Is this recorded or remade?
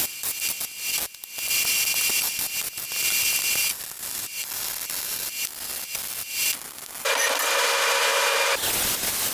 recorded